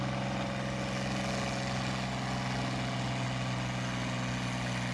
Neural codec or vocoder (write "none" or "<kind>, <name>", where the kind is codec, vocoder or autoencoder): none